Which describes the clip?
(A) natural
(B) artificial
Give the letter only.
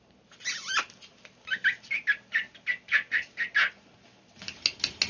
A